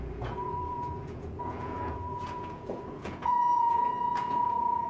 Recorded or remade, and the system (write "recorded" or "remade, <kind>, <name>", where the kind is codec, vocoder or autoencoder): remade, vocoder, Vocos